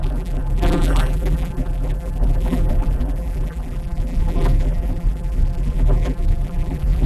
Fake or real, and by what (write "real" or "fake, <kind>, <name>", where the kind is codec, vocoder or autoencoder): fake, vocoder, BigVGAN v2